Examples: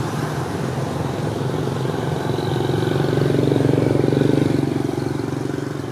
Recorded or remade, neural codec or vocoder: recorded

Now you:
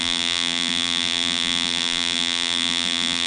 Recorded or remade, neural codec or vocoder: remade, vocoder, BigVGAN v2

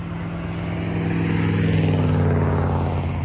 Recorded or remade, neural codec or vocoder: recorded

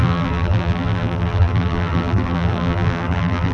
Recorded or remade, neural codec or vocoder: remade, vocoder, BigVGAN v2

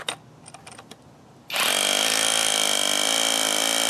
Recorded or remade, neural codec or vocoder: recorded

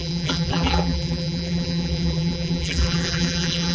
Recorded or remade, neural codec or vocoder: remade, vocoder, BigVGAN v2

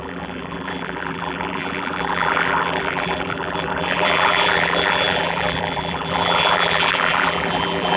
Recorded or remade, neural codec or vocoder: remade, vocoder, BigVGAN v2